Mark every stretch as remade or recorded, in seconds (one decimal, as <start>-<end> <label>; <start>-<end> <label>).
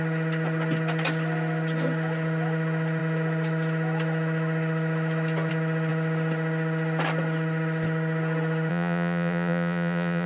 0.0-8.7 recorded; 8.7-10.3 remade